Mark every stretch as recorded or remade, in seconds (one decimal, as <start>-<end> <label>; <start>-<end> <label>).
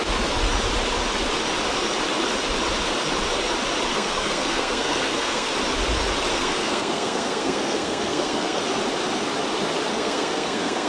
0.0-3.9 recorded; 3.9-5.5 remade; 5.5-6.3 recorded; 6.3-8.6 remade; 8.6-9.9 recorded; 9.9-10.9 remade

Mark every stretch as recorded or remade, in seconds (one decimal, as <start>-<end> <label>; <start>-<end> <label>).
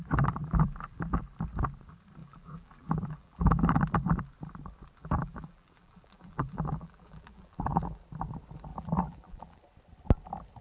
0.0-0.4 recorded; 0.4-1.2 remade; 1.2-2.2 recorded; 2.2-3.6 remade; 3.6-5.0 recorded; 5.0-8.0 remade; 8.0-8.7 recorded; 8.7-9.6 remade; 9.6-10.6 recorded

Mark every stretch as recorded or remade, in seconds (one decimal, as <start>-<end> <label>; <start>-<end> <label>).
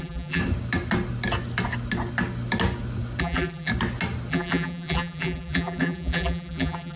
0.0-0.4 remade; 0.4-3.2 recorded; 3.2-3.7 remade; 3.7-4.3 recorded; 4.3-7.0 remade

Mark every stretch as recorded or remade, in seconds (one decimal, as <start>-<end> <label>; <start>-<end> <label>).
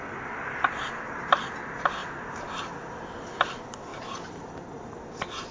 0.0-5.5 recorded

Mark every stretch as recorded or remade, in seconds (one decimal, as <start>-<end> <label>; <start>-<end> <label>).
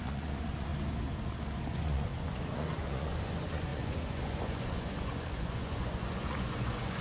0.0-0.7 remade; 0.7-1.7 recorded; 1.7-7.0 remade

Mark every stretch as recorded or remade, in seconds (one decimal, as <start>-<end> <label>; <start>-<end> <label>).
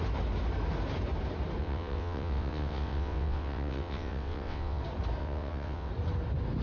0.0-1.6 recorded; 1.6-4.8 remade; 4.8-5.2 recorded; 5.2-5.9 remade; 5.9-6.6 recorded